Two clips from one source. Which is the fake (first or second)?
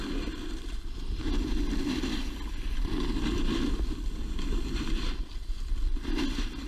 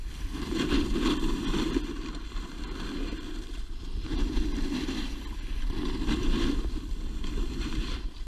second